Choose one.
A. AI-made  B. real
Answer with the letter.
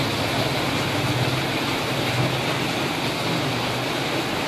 B